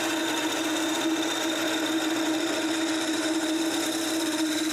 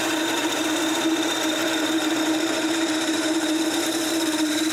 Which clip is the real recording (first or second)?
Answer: first